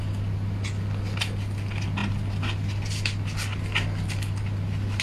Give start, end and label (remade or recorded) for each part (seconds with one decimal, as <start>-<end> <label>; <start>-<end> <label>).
0.0-5.0 recorded